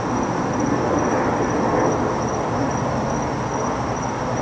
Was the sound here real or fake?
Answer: real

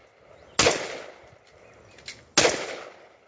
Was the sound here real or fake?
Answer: real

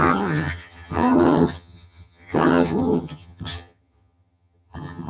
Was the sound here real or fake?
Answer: fake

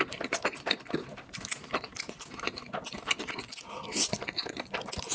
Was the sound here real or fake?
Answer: real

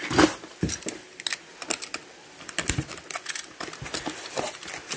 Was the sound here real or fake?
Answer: real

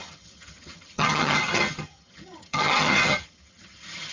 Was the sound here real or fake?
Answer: fake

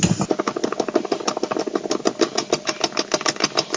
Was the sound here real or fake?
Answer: real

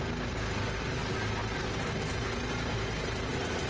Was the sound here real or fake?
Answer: real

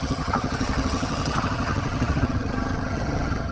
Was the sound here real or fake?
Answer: fake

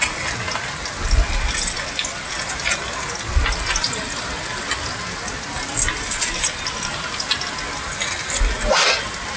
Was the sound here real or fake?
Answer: real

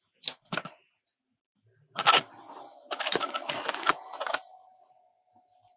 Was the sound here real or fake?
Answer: real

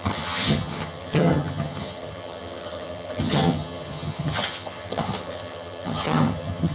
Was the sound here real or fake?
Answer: fake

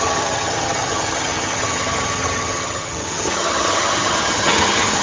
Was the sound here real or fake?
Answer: fake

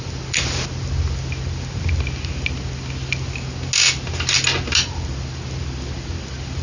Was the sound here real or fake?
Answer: real